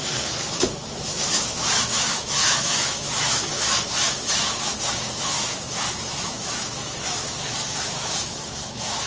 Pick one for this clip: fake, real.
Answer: fake